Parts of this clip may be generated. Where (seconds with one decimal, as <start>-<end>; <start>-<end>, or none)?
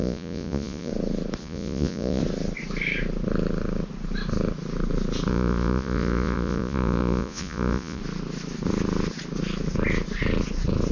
0.0-0.9; 1.4-2.2; 5.3-8.0